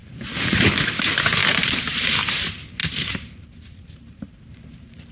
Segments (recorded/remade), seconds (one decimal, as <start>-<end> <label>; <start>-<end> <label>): 0.0-0.7 remade; 0.7-1.4 recorded; 1.4-2.2 remade; 2.2-2.8 recorded; 2.8-5.1 remade